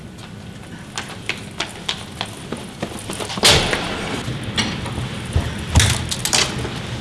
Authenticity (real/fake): real